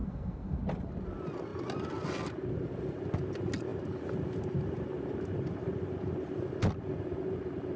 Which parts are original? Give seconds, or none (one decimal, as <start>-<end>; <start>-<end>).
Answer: 0.6-7.8